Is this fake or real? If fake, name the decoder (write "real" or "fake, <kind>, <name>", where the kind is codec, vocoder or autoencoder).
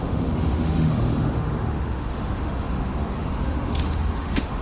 fake, autoencoder, DAC-VAE